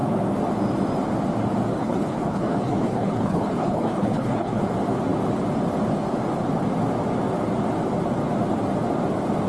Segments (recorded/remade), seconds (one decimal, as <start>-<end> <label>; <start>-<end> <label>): 0.0-1.8 recorded; 1.8-4.6 remade; 4.6-9.5 recorded